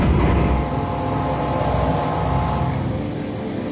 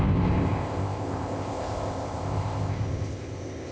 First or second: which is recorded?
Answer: first